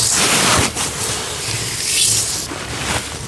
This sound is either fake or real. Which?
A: real